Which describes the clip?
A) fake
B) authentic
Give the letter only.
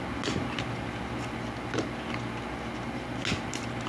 B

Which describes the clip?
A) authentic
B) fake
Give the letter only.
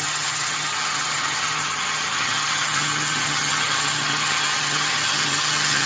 B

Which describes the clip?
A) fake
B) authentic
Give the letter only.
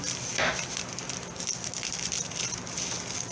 B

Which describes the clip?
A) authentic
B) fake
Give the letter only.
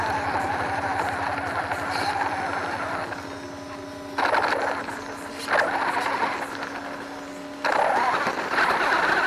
A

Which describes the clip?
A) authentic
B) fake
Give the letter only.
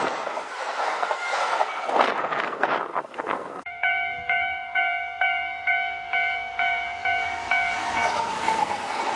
B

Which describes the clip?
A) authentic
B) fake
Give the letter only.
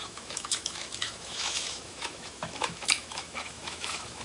B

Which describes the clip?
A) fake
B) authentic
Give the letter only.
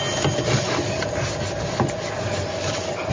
B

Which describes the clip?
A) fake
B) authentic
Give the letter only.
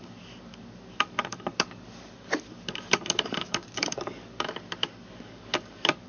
A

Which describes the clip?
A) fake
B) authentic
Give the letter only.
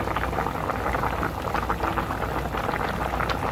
B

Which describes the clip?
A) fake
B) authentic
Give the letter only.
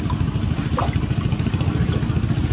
B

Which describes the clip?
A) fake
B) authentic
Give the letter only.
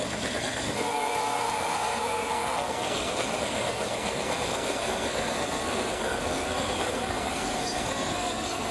A